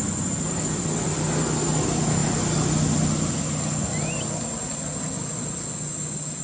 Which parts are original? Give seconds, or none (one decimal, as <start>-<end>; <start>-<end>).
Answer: 0.0-6.4